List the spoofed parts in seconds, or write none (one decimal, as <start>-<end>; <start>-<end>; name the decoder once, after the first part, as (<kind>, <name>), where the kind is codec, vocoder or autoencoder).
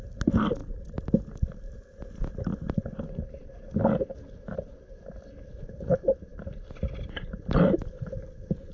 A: none